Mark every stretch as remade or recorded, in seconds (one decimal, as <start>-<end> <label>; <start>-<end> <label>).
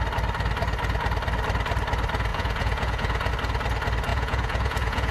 0.0-2.3 recorded; 2.3-3.3 remade; 3.3-4.1 recorded; 4.1-5.1 remade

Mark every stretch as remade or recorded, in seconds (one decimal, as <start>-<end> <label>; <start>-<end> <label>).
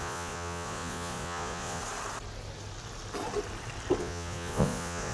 0.0-1.8 remade; 1.8-4.0 recorded; 4.0-5.1 remade